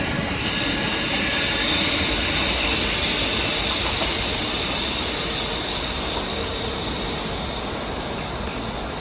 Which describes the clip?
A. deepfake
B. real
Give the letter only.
B